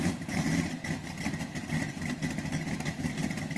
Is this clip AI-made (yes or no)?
yes